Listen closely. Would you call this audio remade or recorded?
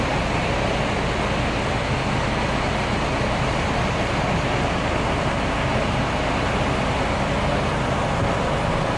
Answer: recorded